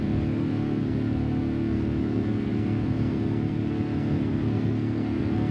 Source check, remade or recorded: remade